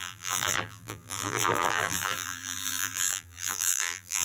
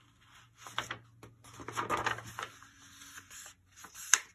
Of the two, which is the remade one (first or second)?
first